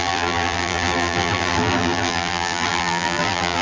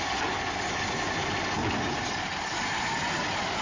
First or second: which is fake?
first